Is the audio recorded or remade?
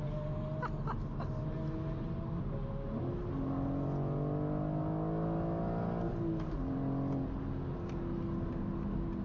recorded